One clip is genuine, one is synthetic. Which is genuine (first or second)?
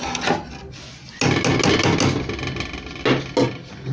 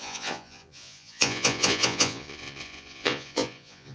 first